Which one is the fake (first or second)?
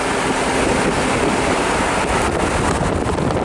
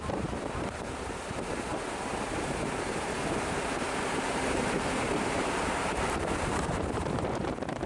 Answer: second